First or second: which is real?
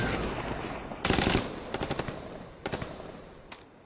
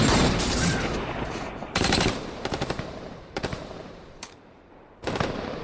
first